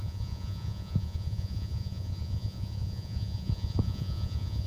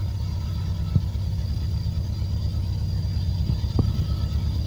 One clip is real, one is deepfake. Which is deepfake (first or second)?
first